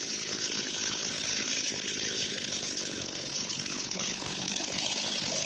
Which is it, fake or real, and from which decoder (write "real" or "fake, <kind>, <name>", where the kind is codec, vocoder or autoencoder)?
fake, codec, HILCodec